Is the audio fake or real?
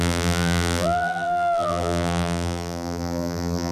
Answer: fake